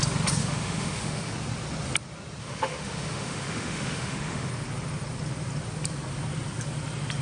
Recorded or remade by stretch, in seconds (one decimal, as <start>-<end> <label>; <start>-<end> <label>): 0.0-0.4 recorded; 0.4-1.3 remade; 1.3-2.4 recorded; 2.4-4.5 remade; 4.5-7.2 recorded